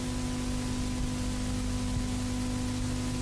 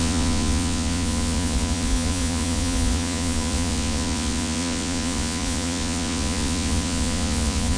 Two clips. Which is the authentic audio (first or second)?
first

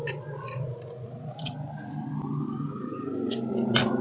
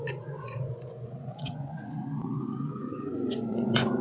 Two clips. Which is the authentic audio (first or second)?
first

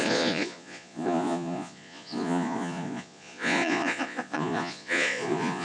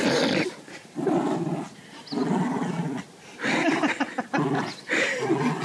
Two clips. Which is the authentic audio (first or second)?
second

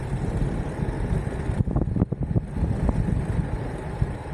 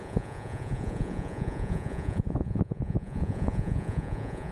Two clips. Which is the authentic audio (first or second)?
first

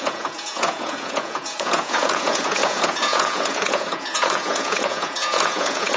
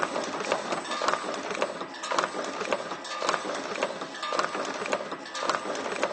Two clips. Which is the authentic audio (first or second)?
second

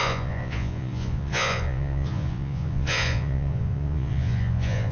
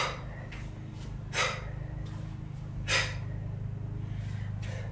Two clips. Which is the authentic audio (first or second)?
second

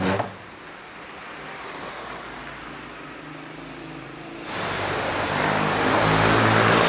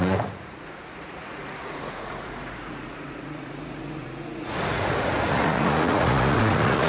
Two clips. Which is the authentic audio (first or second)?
first